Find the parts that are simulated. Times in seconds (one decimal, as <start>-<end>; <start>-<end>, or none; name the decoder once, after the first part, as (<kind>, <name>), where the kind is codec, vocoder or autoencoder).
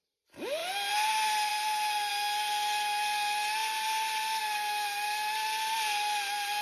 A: 0.6-1.1 (vocoder, BigVGAN v2); 1.5-2.1; 3.6-4.4